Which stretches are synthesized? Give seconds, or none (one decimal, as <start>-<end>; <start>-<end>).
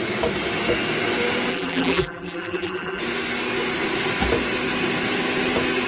1.5-3.0